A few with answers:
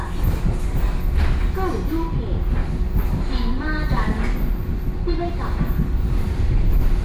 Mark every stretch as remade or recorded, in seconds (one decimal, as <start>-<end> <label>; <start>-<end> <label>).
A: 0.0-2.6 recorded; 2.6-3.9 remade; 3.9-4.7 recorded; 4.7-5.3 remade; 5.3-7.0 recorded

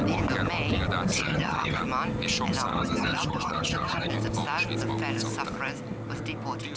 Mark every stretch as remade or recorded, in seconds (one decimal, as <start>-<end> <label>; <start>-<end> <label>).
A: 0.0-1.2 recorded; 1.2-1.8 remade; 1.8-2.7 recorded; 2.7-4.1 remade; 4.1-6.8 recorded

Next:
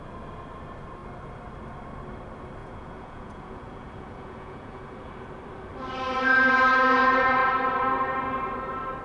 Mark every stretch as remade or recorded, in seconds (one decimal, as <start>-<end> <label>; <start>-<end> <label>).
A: 0.0-2.6 recorded; 2.6-5.1 remade; 5.1-9.0 recorded

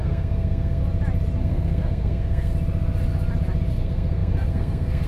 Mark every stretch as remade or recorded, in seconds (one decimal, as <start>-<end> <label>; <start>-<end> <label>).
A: 0.0-0.8 remade; 0.8-1.4 recorded; 1.4-2.5 remade; 2.5-3.7 recorded; 3.7-5.1 remade

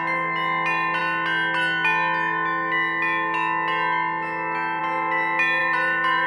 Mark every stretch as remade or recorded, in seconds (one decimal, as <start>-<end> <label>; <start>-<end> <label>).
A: 0.0-5.6 recorded; 5.6-6.3 remade

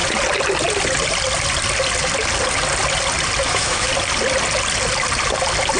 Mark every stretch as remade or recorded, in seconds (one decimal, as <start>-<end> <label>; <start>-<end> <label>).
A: 0.0-3.5 recorded; 3.5-3.9 remade; 3.9-5.8 recorded

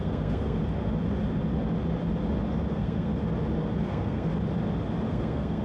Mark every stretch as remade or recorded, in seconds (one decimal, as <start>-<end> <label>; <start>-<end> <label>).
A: 0.0-0.6 remade; 0.6-2.7 recorded; 2.7-3.1 remade; 3.1-3.9 recorded; 3.9-4.3 remade; 4.3-5.1 recorded; 5.1-5.6 remade

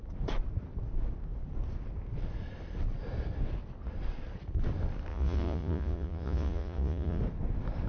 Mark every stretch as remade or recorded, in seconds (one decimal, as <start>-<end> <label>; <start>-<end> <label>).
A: 0.0-5.1 recorded; 5.1-7.2 remade; 7.2-7.9 recorded